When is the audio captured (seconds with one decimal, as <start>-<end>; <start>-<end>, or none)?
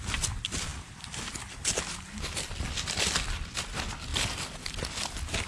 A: 0.0-5.5